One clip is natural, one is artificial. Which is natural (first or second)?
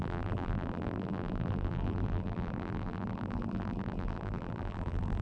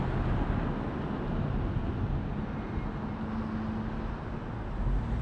second